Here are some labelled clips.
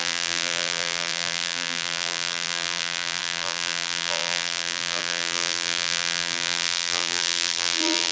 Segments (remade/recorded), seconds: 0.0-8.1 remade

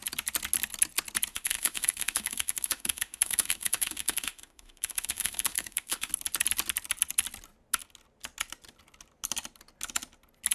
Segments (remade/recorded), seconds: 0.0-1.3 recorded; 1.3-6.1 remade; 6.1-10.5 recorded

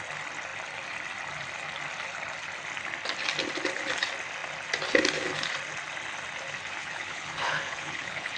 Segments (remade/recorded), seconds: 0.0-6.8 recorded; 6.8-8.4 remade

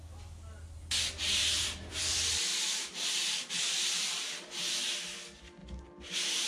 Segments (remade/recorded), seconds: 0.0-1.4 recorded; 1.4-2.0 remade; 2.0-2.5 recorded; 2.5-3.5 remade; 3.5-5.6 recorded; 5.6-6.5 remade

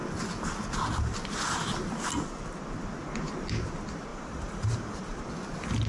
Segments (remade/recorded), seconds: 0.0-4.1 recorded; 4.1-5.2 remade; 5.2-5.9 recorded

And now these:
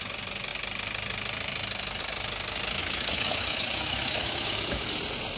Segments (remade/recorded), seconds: 0.0-2.8 recorded; 2.8-4.9 remade; 4.9-5.4 recorded

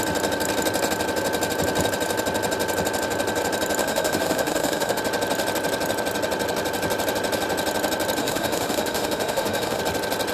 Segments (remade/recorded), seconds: 0.0-3.8 recorded; 3.8-5.0 remade; 5.0-8.2 recorded; 8.2-9.8 remade; 9.8-10.3 recorded